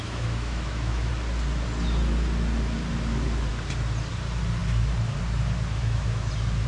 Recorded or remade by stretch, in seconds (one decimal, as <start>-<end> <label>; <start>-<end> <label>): 0.0-1.1 remade; 1.1-5.8 recorded; 5.8-6.3 remade; 6.3-6.7 recorded